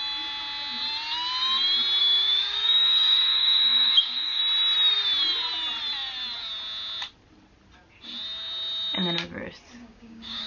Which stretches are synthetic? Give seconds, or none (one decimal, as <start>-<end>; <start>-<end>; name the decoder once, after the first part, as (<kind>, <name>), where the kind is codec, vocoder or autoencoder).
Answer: 2.0-4.4 (codec, DAC); 9.8-10.5

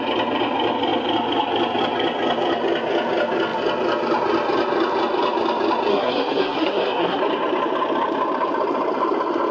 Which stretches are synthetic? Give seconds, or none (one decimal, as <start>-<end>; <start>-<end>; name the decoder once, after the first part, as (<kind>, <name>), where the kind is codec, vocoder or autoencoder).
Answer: 5.9-7.2 (codec, SNAC)

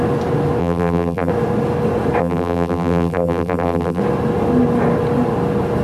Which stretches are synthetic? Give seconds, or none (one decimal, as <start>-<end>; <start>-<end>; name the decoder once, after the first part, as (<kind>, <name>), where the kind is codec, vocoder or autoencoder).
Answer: 0.6-1.3 (vocoder, BigVGAN v2); 2.2-4.0

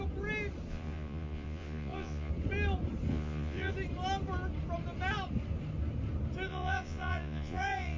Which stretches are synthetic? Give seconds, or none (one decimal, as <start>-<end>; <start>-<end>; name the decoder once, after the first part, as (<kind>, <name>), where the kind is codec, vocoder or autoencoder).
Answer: 0.7-2.3 (vocoder, Vocos); 3.1-3.7; 6.5-8.0

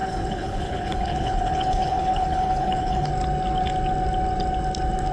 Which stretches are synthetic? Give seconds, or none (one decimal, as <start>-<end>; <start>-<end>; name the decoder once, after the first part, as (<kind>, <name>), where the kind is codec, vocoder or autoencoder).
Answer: 0.0-3.1 (codec, HILCodec)

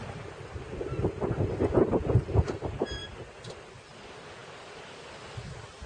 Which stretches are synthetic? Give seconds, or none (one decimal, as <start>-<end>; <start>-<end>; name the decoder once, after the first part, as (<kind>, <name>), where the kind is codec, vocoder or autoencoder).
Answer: none